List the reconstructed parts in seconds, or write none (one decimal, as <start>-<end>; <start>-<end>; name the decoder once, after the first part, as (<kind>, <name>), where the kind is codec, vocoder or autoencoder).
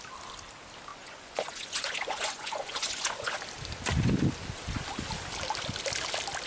0.9-3.3 (vocoder, Vocos)